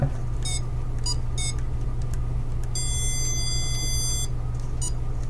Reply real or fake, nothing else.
real